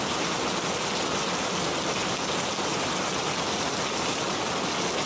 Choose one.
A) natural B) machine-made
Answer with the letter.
A